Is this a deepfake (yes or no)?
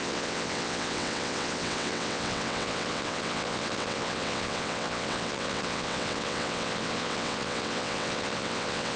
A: yes